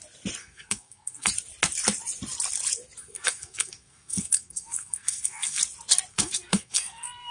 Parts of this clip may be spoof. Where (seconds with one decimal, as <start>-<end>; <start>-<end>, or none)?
0.4-1.3; 3.0-5.6; 6.1-7.3